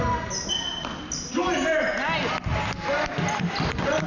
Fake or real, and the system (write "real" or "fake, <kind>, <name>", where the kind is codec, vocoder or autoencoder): real